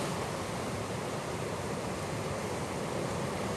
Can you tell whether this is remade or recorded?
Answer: recorded